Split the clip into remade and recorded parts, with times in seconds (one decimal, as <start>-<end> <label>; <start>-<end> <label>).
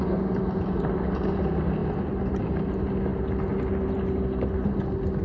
0.0-1.8 recorded; 1.8-2.4 remade; 2.4-5.2 recorded